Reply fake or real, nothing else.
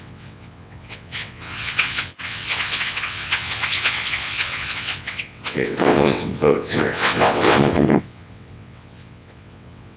fake